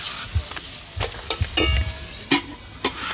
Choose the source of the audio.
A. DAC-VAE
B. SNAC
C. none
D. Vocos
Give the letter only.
C